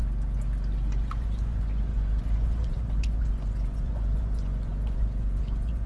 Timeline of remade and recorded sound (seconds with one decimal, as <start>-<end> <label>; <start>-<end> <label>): 0.0-0.9 recorded; 0.9-5.9 remade